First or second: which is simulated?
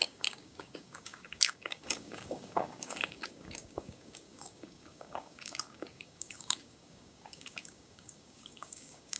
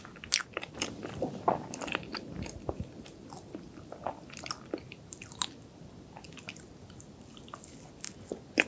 first